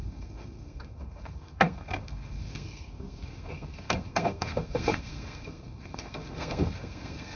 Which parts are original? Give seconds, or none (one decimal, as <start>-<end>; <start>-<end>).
none